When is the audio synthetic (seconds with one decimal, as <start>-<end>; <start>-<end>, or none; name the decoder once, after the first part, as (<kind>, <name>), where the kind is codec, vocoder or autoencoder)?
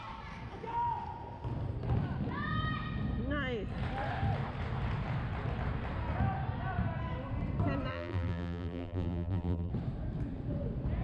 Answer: 7.9-9.7 (vocoder, BigVGAN v2)